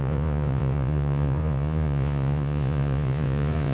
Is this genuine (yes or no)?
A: no